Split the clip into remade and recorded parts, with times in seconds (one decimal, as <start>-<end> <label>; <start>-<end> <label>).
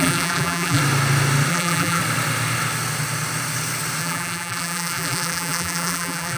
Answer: 0.0-0.8 remade; 0.8-1.5 recorded; 1.5-2.0 remade; 2.0-4.0 recorded; 4.0-6.4 remade